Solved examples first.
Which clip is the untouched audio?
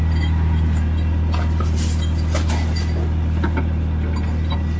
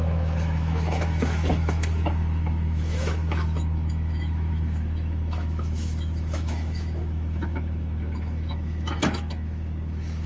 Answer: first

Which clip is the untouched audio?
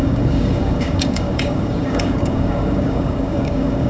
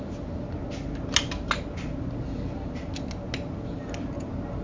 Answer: second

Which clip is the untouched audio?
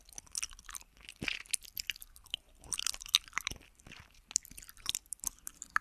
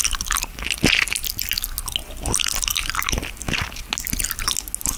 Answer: second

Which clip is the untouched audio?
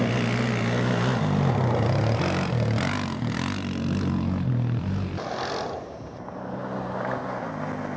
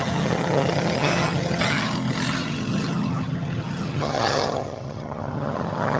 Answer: first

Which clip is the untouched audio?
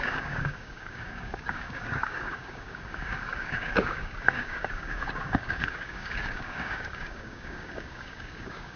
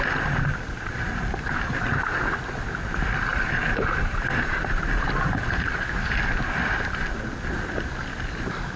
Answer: second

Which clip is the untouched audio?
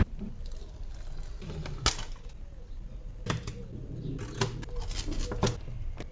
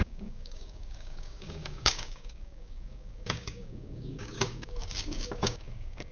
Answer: first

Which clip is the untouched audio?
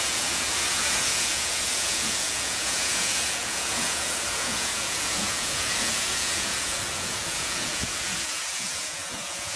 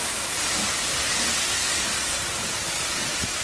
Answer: second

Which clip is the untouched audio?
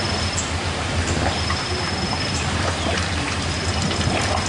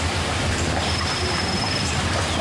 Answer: first